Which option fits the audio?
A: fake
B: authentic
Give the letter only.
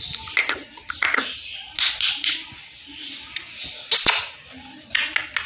B